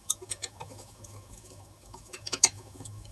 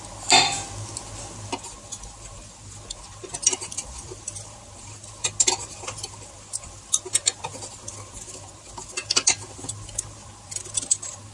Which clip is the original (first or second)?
second